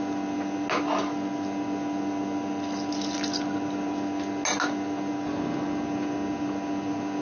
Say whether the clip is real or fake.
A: real